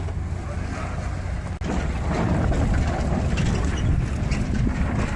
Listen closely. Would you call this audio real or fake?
real